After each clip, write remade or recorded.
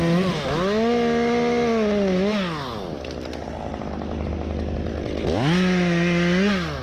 recorded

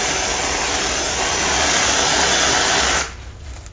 recorded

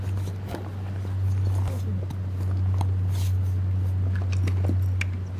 recorded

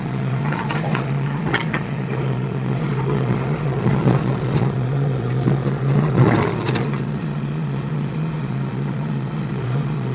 remade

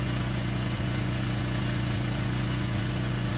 remade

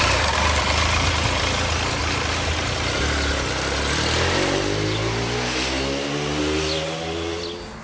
recorded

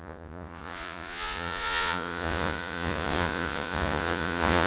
remade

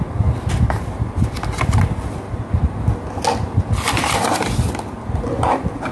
recorded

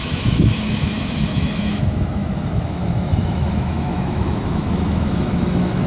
remade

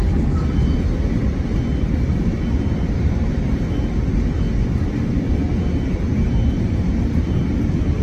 recorded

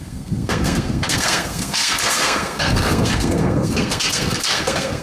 remade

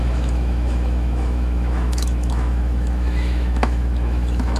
remade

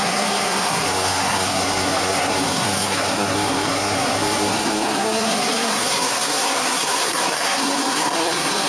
remade